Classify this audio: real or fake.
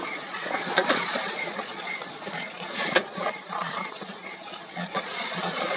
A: fake